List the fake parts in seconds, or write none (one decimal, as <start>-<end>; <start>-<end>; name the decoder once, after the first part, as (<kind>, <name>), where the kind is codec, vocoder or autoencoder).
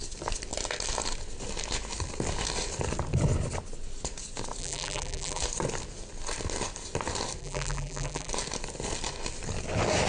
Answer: 4.6-5.4 (vocoder, BigVGAN v2); 7.4-8.3